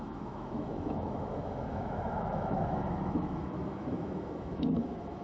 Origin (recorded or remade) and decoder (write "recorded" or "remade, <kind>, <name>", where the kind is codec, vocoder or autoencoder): remade, autoencoder, DAC-VAE